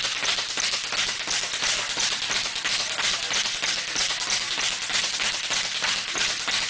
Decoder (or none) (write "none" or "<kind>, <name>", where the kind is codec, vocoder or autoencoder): none